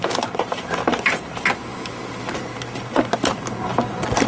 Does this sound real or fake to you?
real